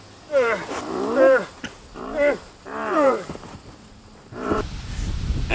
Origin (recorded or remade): remade